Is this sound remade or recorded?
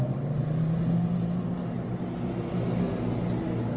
recorded